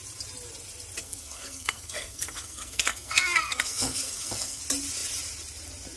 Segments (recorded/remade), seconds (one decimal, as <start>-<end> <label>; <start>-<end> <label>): 0.0-1.0 recorded; 1.0-4.6 remade; 4.6-6.0 recorded